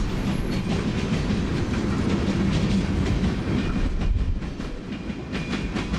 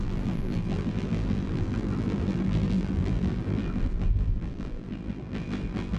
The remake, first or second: second